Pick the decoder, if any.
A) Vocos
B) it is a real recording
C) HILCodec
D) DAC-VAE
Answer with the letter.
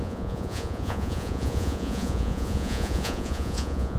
A